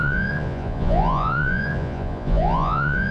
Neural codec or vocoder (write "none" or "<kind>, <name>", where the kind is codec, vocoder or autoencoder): vocoder, Vocos